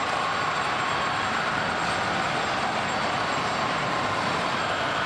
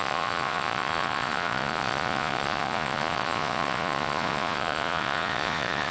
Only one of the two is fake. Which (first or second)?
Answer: second